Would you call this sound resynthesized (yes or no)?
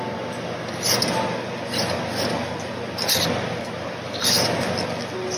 no